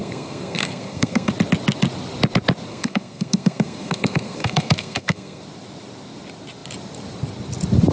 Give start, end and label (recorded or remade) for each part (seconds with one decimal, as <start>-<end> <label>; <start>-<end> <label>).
0.0-1.3 remade; 1.3-2.7 recorded; 2.7-5.4 remade; 5.4-7.9 recorded